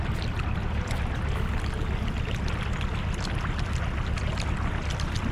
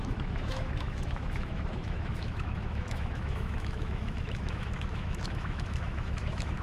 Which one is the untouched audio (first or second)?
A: first